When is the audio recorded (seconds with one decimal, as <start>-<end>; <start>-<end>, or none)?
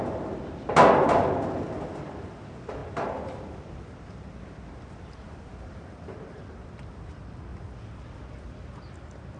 0.0-2.8; 6.9-7.5; 8.0-9.4